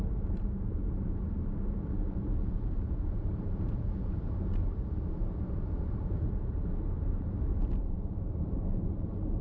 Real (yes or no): no